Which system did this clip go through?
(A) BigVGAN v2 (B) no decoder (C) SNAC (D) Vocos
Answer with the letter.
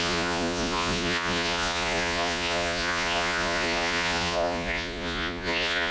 D